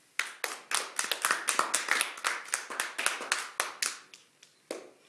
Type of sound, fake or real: real